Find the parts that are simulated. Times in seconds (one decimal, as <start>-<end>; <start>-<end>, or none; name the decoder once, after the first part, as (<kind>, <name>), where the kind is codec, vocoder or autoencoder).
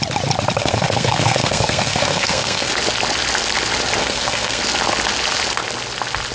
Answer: 0.6-2.7 (codec, SNAC); 4.0-4.6